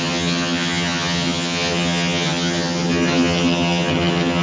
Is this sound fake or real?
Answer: fake